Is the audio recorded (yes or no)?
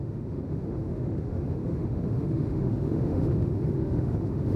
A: no